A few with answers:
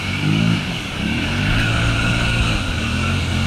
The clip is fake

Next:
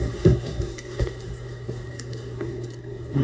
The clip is fake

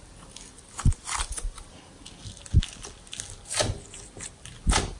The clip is real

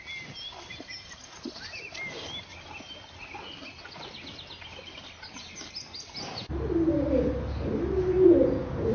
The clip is real